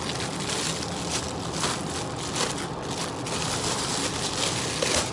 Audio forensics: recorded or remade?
recorded